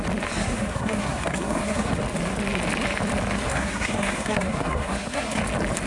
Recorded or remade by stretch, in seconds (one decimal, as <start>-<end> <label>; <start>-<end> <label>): 0.0-0.4 recorded; 0.4-2.0 remade; 2.0-3.5 recorded; 3.5-5.4 remade; 5.4-5.9 recorded